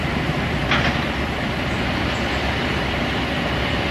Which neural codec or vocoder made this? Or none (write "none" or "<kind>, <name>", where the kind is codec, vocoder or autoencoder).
vocoder, BigVGAN v2